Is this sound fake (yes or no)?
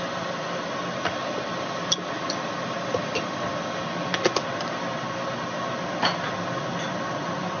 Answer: no